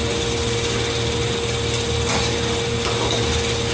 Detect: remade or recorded recorded